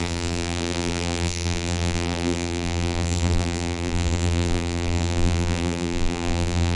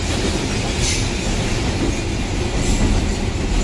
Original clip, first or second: second